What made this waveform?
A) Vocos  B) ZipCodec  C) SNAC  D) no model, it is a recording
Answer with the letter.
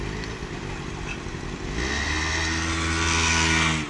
D